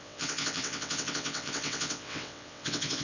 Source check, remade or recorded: remade